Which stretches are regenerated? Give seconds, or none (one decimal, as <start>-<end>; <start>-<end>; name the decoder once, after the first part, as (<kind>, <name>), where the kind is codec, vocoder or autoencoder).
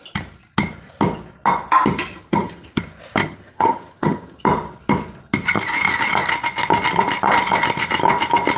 2.1-2.8 (vocoder, HiFi-GAN); 3.2-4.4